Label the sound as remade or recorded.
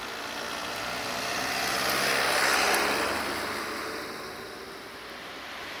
recorded